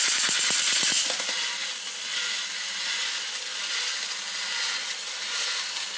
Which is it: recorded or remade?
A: recorded